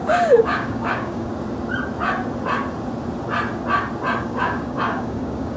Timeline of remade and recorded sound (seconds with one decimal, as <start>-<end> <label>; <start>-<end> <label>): 0.0-1.3 remade; 1.3-4.2 recorded; 4.2-5.6 remade